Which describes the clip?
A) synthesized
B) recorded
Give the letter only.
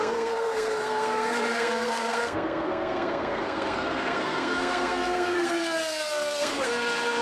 A